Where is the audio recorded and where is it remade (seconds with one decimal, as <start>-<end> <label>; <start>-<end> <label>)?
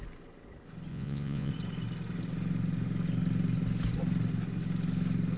0.0-0.9 recorded; 0.9-1.5 remade; 1.5-5.4 recorded